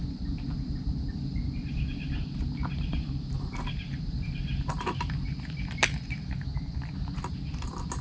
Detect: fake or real real